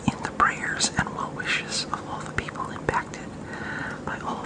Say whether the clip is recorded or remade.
recorded